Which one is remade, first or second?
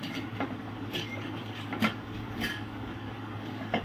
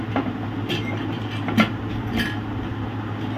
first